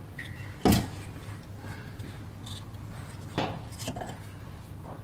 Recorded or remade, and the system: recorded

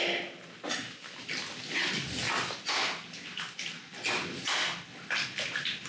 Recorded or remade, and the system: recorded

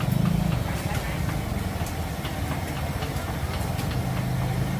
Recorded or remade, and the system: recorded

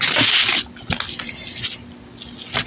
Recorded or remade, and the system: recorded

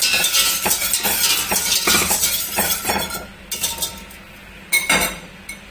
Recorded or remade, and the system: recorded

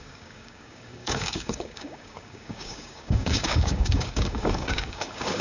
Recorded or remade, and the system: remade, codec, DAC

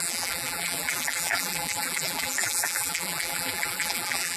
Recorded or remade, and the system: remade, vocoder, BigVGAN v2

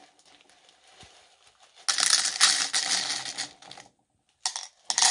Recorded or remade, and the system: recorded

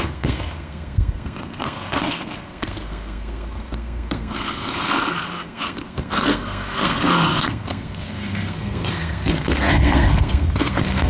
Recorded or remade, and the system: remade, codec, SNAC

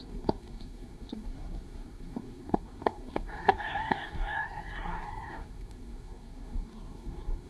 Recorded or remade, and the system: remade, codec, SNAC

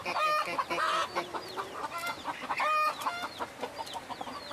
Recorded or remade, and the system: recorded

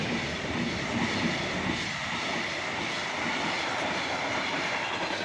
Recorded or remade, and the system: recorded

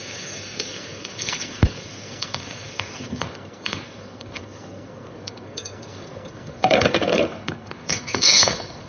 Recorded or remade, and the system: remade, codec, SNAC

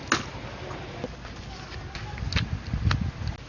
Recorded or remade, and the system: recorded